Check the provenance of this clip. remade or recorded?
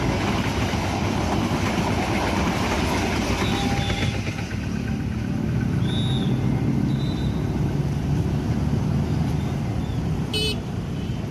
recorded